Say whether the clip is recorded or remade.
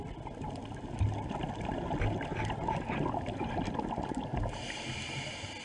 recorded